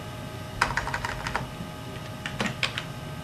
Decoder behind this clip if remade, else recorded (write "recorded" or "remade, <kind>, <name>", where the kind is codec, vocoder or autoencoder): recorded